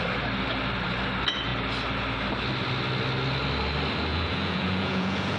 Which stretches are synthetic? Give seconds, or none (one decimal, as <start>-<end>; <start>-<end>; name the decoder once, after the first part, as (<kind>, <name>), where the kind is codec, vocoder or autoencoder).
4.1-5.4 (vocoder, Vocos)